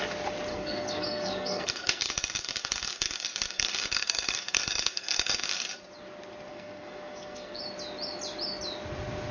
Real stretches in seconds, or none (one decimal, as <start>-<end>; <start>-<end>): 0.0-0.5; 5.7-6.5; 7.6-9.3